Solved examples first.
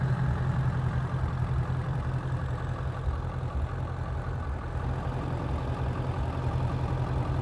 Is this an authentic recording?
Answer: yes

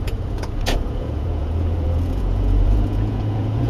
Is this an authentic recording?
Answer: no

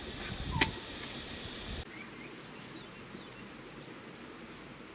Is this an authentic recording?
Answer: yes